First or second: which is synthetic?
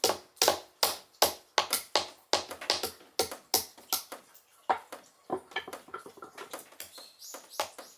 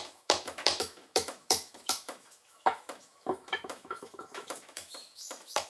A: second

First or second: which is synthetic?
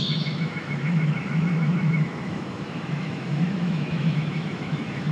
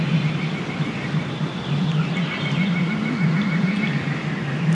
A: first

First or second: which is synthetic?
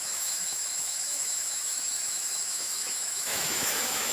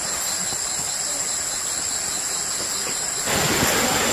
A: first